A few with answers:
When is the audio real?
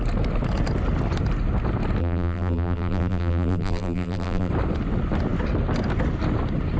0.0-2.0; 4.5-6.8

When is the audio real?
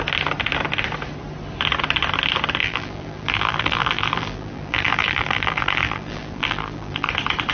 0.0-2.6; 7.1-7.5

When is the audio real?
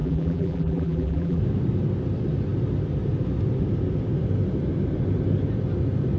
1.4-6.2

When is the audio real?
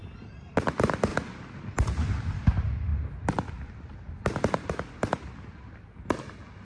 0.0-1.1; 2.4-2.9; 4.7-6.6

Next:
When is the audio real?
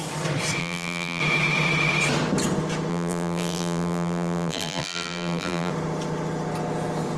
0.0-0.6; 1.2-2.9; 5.7-7.2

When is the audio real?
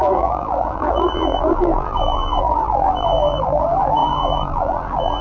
none